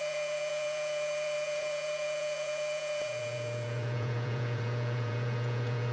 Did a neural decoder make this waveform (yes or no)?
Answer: yes